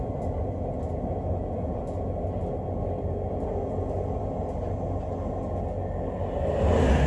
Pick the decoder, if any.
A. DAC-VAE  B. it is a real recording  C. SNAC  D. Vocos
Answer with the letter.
B